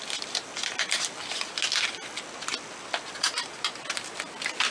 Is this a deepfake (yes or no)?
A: no